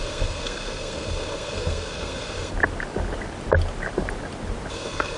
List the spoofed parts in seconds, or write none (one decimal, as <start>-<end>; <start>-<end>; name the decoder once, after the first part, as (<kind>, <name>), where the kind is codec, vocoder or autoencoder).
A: 0.0-2.5 (codec, SNAC); 4.7-5.2